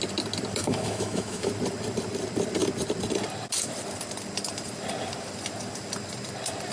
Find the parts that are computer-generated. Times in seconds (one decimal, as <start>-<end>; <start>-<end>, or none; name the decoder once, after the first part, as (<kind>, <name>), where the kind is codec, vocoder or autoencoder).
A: 0.6-1.5 (autoencoder, DAC-VAE)